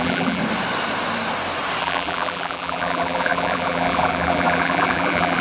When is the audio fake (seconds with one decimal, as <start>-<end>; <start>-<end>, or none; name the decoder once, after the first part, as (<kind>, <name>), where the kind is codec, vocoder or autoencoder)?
0.0-0.4 (vocoder, BigVGAN v2); 1.8-5.4